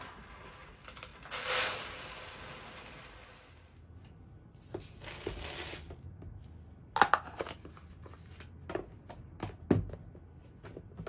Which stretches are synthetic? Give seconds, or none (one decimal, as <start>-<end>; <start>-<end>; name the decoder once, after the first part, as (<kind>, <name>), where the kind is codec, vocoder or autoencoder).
none